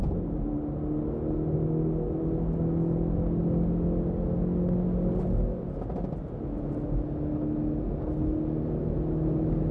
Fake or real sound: real